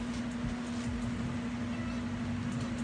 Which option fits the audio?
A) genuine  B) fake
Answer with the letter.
A